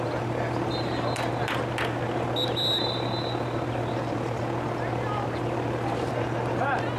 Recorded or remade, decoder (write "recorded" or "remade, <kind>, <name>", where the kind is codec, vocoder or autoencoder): recorded